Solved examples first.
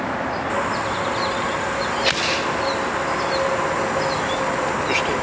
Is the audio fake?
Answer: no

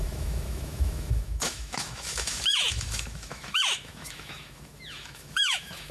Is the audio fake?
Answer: yes